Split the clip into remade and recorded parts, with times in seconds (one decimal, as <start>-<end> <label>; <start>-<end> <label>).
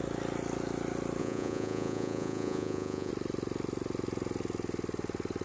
0.0-1.2 recorded; 1.2-3.1 remade; 3.1-5.4 recorded